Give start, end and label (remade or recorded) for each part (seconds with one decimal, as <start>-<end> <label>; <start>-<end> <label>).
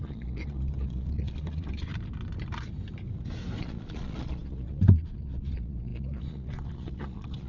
0.0-1.9 remade; 1.9-3.6 recorded; 3.6-7.5 remade